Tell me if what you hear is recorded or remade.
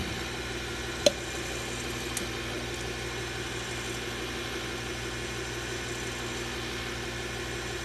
recorded